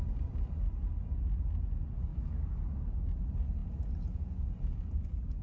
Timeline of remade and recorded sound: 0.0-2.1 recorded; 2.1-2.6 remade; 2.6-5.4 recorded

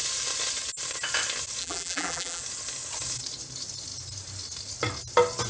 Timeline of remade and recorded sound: 0.0-1.6 recorded; 1.6-2.4 remade; 2.4-5.5 recorded

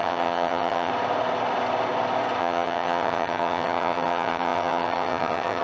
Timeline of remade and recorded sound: 0.0-0.9 remade; 0.9-2.4 recorded; 2.4-5.6 remade